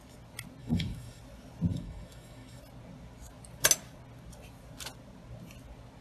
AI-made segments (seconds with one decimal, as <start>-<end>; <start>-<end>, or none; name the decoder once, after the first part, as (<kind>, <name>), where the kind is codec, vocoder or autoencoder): 0.6-1.2 (autoencoder, DAC-VAE); 1.7-2.6